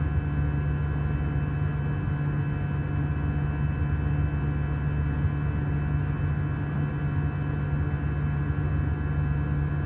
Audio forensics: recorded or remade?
recorded